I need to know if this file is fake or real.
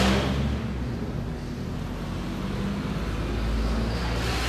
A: real